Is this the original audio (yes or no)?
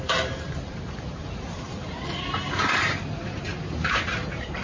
no